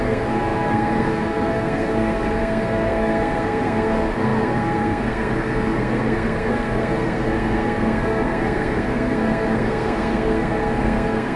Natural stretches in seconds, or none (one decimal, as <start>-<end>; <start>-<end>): none